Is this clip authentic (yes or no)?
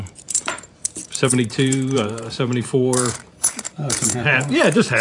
no